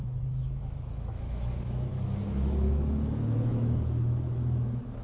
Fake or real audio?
fake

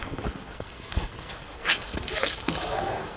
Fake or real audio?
fake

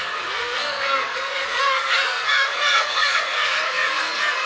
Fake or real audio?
fake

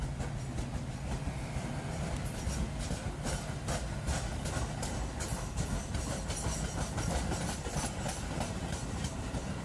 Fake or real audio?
real